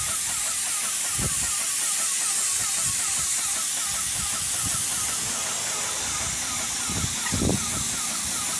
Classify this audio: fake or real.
real